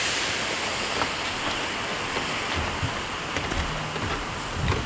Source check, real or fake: real